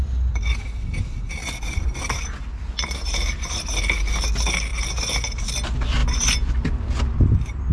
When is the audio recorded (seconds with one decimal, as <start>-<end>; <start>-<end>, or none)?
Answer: 0.0-7.7